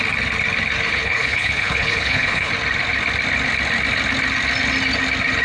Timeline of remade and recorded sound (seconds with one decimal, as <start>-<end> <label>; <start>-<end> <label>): 0.0-0.9 recorded; 0.9-2.5 remade; 2.5-5.4 recorded